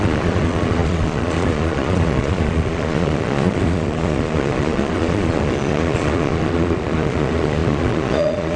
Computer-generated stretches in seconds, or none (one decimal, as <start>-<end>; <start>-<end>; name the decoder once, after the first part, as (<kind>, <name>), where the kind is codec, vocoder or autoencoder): 0.0-8.6 (vocoder, Vocos)